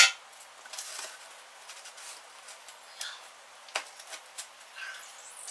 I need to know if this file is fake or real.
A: real